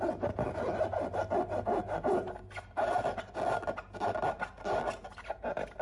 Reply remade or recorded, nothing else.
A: recorded